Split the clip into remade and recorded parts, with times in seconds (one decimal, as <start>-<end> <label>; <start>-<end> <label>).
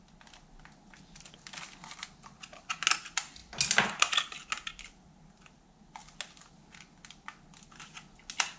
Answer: 0.0-8.6 recorded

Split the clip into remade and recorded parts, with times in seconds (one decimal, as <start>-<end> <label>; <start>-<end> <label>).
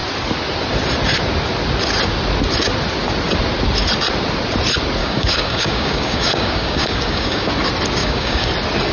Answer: 0.0-5.0 recorded; 5.0-7.5 remade; 7.5-8.0 recorded; 8.0-8.5 remade; 8.5-8.9 recorded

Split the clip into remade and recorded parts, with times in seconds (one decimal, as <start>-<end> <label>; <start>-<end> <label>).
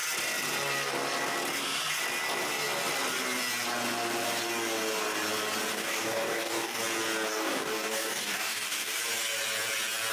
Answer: 0.0-5.7 recorded; 5.7-6.8 remade; 6.8-7.3 recorded; 7.3-9.0 remade; 9.0-10.1 recorded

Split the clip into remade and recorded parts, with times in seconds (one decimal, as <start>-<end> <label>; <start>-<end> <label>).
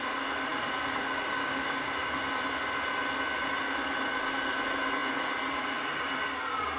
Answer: 0.0-0.5 recorded; 0.5-2.2 remade; 2.2-6.8 recorded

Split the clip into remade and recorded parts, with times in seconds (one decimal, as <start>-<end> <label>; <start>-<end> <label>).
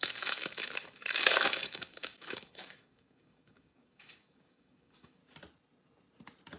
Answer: 0.0-5.2 remade; 5.2-6.6 recorded